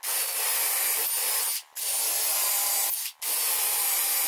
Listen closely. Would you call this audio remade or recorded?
recorded